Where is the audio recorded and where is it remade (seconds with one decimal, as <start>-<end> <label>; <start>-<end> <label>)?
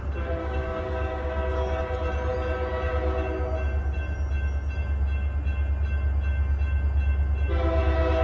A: 0.0-0.4 recorded; 0.4-1.8 remade; 1.8-8.2 recorded